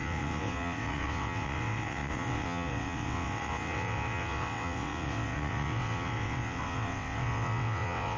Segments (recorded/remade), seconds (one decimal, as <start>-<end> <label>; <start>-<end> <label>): 0.0-8.2 remade